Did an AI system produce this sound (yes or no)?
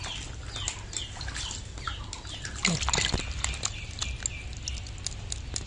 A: no